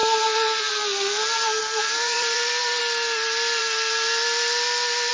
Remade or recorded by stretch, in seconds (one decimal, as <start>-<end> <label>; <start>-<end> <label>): 0.0-1.6 recorded; 1.6-2.8 remade; 2.8-5.1 recorded